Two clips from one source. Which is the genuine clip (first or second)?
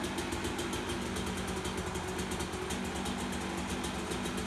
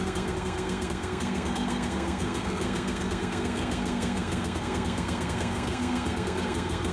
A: first